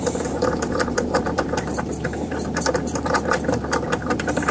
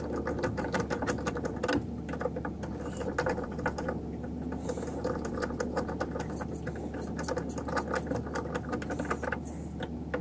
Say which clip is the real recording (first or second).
second